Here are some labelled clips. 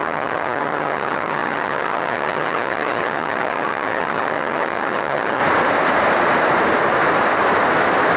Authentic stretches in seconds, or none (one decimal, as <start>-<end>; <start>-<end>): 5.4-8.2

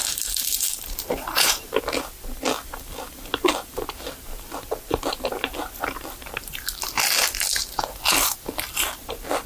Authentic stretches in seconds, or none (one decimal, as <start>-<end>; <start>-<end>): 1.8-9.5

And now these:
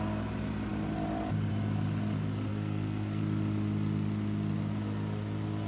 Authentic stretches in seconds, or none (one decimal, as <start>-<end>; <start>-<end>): 0.0-2.5; 3.2-5.7